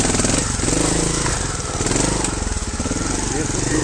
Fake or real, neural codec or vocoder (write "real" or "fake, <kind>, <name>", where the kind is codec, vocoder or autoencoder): real